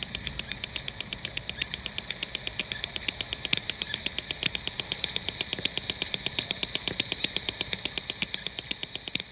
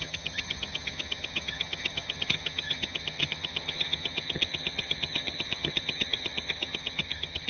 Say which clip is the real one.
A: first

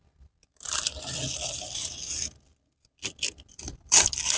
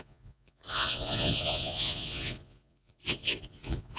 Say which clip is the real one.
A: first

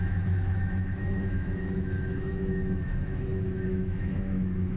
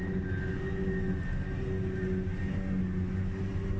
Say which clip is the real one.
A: second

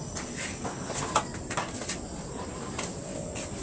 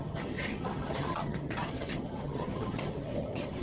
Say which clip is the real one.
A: first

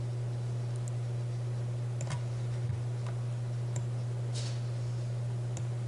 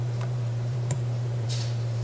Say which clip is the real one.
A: first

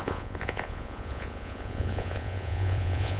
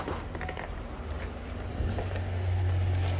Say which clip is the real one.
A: second